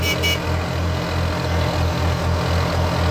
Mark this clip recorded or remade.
recorded